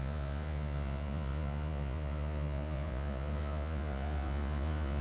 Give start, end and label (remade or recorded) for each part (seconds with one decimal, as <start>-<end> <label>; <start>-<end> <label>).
0.0-5.0 remade